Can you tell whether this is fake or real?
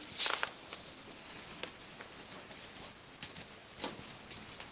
real